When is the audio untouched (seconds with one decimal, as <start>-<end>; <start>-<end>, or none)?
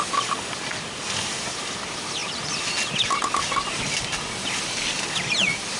0.0-5.8